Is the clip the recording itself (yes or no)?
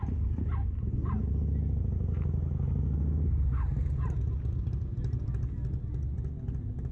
yes